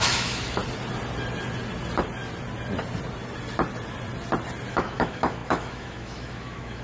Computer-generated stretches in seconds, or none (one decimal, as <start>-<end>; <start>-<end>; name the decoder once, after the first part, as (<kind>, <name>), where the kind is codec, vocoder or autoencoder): 0.0-0.6 (autoencoder, DAC-VAE); 4.7-6.8